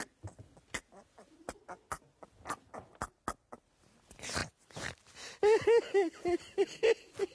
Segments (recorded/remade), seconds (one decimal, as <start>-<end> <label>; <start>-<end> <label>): 0.0-7.3 recorded